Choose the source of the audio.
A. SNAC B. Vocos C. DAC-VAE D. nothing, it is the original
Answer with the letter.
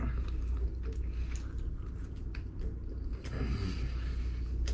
D